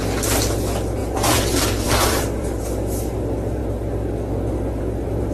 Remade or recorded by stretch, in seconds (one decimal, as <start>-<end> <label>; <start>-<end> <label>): 0.0-1.0 recorded; 1.0-2.6 remade; 2.6-5.3 recorded